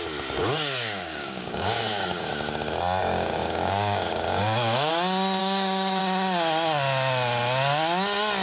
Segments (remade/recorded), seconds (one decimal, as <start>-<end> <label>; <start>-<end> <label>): 0.0-0.4 recorded; 0.4-2.3 remade; 2.3-3.0 recorded; 3.0-4.9 remade; 4.9-5.4 recorded; 5.4-6.0 remade; 6.0-8.4 recorded